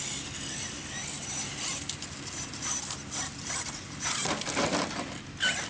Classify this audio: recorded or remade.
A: recorded